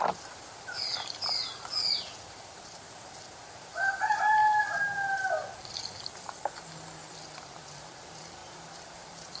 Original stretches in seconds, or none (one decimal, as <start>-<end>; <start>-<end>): 4.4-7.1